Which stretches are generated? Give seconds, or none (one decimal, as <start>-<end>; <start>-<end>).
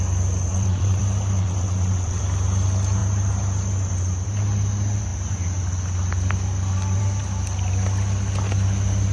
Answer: 0.5-1.0; 1.4-2.2